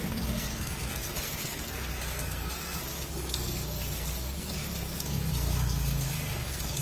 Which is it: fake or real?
fake